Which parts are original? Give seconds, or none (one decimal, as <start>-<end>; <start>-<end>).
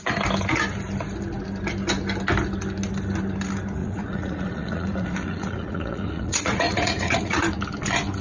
0.0-3.8; 7.6-8.2